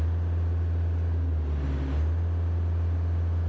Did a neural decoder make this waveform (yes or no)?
no